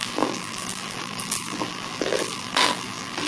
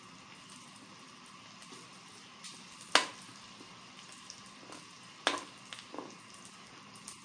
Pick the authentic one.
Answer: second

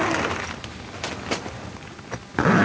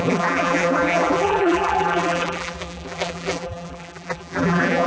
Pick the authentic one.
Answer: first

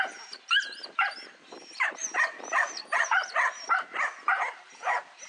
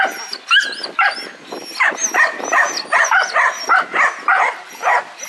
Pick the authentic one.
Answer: second